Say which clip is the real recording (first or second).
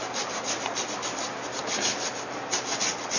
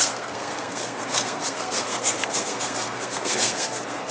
first